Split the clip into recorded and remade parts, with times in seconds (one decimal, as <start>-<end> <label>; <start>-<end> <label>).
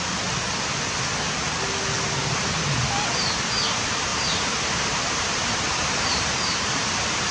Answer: 0.0-4.1 recorded; 4.1-6.7 remade; 6.7-7.3 recorded